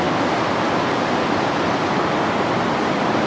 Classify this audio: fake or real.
real